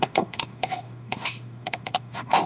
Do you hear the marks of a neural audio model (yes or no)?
yes